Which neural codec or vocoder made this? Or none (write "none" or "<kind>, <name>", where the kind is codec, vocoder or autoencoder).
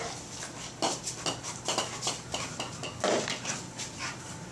none